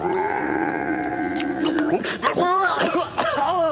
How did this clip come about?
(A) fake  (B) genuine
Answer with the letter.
A